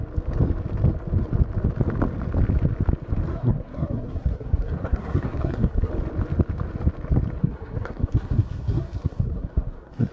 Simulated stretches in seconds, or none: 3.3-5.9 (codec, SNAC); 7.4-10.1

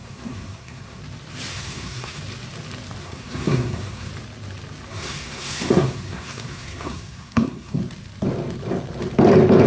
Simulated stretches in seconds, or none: 0.0-1.0 (codec, SNAC); 1.5-2.2; 3.0-4.1; 4.9-7.8

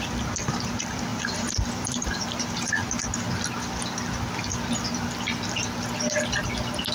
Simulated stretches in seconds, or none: 1.1-2.7 (vocoder, BigVGAN v2)

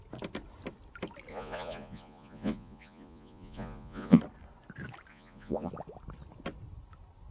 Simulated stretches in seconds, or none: 1.3-4.2 (vocoder, Vocos); 5.1-5.7

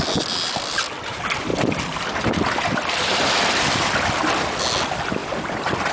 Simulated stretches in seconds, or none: 5.2-5.9 (vocoder, BigVGAN v2)

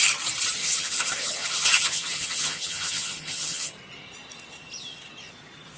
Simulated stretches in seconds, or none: 0.6-3.7 (vocoder, HiFi-GAN)